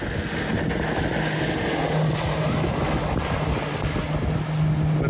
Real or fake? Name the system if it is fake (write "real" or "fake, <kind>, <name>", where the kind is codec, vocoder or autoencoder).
real